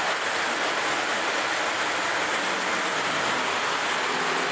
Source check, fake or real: real